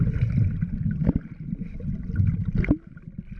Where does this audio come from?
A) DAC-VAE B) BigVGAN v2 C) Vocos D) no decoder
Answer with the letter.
D